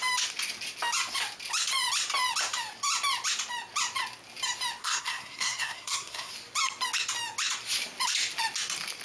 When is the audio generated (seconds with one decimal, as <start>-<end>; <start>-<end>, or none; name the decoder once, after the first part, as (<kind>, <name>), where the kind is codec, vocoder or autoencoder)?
4.8-6.3 (codec, SNAC)